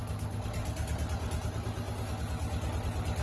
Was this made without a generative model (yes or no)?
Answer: yes